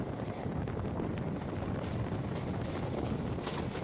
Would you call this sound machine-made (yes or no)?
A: no